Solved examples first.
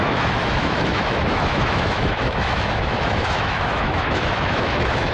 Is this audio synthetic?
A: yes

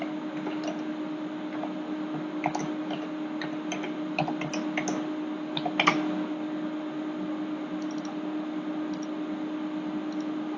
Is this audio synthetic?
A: no